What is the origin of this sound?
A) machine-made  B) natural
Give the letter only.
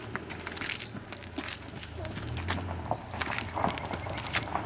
B